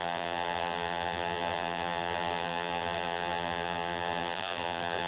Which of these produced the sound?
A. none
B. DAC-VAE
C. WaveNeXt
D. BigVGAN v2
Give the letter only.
D